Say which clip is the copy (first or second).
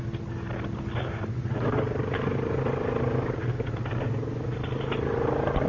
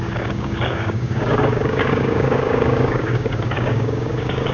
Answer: second